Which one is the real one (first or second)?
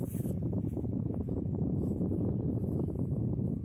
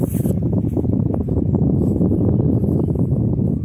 second